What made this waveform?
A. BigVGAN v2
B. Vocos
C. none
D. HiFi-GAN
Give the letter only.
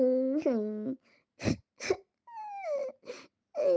C